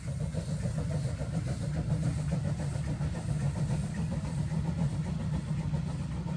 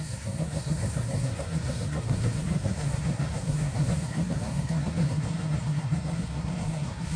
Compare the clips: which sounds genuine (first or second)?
first